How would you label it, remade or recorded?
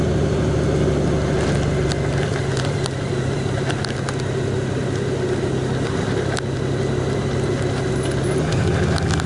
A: recorded